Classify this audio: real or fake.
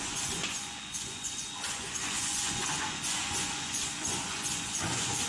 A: fake